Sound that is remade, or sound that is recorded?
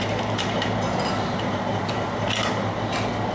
recorded